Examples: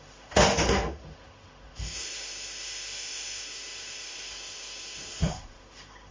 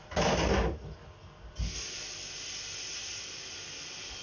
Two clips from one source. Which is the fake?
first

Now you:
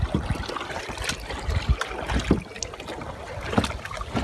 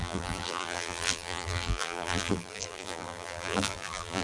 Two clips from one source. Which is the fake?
second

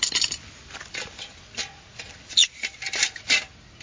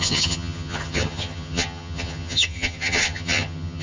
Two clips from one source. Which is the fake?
second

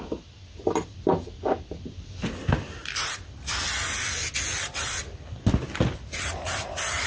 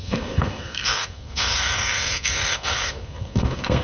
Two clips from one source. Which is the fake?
second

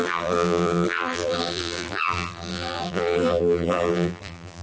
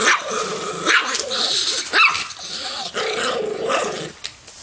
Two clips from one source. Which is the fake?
first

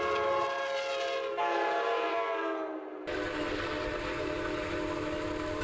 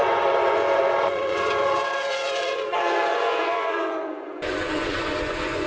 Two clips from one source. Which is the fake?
second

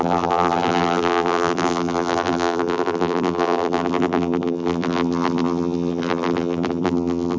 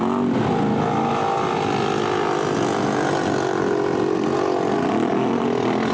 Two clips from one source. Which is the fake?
first